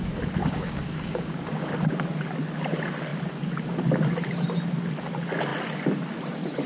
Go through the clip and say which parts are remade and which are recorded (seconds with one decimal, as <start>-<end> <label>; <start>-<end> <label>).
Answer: 0.0-0.4 recorded; 0.4-1.7 remade; 1.7-6.7 recorded